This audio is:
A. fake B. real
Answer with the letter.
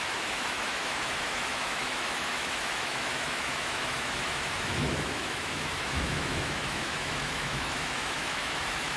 A